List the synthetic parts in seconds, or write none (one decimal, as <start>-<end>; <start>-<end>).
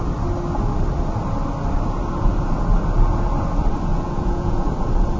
3.9-4.6